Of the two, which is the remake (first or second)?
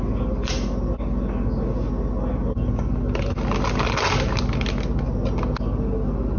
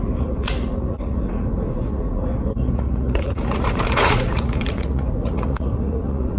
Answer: second